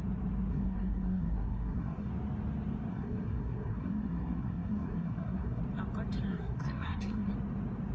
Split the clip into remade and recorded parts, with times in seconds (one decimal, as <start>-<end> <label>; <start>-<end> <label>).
0.0-0.5 recorded; 0.5-2.1 remade; 2.1-2.9 recorded; 2.9-5.6 remade; 5.6-6.3 recorded; 6.3-7.3 remade; 7.3-7.9 recorded